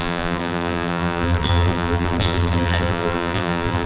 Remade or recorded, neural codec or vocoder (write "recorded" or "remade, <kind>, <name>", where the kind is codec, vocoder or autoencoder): remade, vocoder, BigVGAN v2